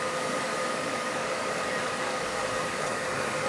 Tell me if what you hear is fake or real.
fake